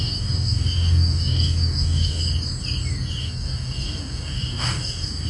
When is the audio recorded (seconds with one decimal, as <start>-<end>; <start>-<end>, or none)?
2.2-3.2